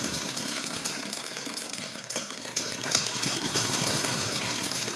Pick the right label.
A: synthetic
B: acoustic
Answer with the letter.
A